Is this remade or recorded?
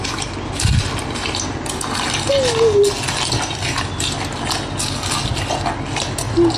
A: recorded